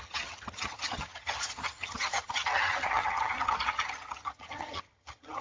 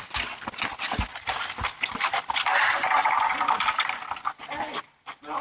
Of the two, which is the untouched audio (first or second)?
second